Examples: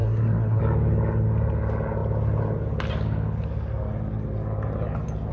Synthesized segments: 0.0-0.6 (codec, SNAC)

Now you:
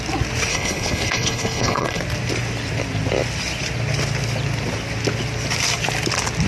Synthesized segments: 0.5-2.0 (codec, HILCodec)